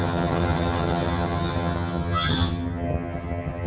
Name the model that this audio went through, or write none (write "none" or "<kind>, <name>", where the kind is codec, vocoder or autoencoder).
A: vocoder, HiFi-GAN